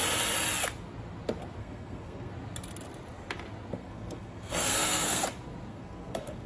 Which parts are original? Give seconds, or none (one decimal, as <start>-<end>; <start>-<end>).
0.0-1.6; 2.3-3.8; 5.2-5.7